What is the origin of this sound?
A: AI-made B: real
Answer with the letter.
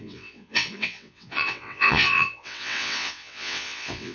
A